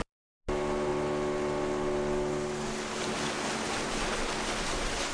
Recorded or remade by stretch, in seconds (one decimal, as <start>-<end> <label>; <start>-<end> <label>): 0.0-5.1 recorded

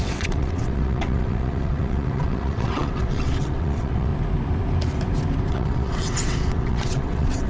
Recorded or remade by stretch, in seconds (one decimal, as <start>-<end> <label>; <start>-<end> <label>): 0.0-4.1 remade; 4.1-5.5 recorded; 5.5-7.5 remade

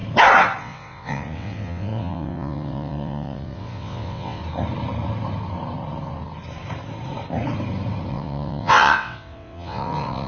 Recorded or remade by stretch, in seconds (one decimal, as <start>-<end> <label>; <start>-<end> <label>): 0.0-0.6 recorded; 0.6-4.4 remade; 4.4-8.1 recorded; 8.1-10.3 remade

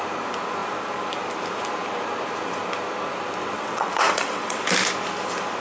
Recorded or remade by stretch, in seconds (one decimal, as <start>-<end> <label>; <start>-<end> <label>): 0.0-3.4 recorded; 3.4-4.6 remade; 4.6-5.6 recorded